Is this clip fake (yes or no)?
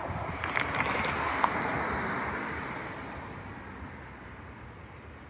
no